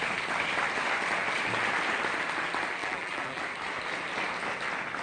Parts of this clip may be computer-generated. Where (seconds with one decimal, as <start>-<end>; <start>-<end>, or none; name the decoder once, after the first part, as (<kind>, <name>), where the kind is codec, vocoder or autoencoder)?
2.8-3.4 (vocoder, BigVGAN v2)